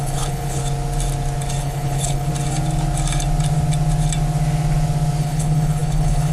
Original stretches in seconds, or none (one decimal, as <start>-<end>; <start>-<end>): 0.6-1.6; 2.3-5.2